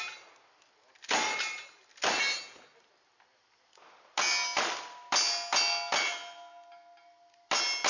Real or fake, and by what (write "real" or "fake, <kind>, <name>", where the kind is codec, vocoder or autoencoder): real